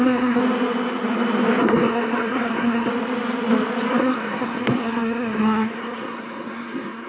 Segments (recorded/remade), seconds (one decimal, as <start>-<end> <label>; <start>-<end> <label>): 0.0-0.4 remade; 0.4-1.6 recorded; 1.6-2.9 remade; 2.9-3.9 recorded; 3.9-7.1 remade